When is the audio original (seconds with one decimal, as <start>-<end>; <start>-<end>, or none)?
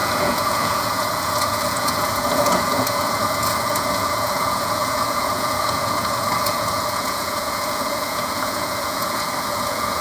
none